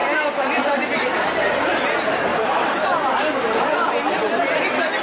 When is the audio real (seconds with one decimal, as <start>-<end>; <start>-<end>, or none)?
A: 0.0-5.0